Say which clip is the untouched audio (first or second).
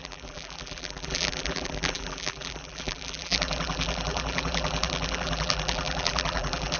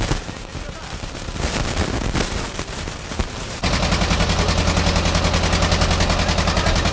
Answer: second